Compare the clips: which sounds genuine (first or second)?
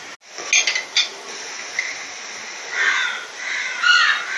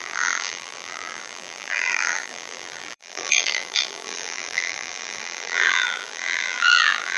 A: first